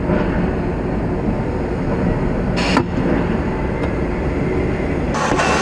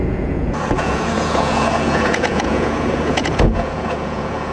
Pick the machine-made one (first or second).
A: second